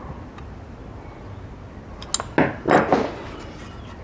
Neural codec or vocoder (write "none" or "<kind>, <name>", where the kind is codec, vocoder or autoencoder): none